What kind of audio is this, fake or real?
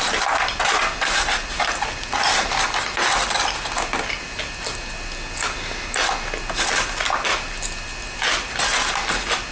real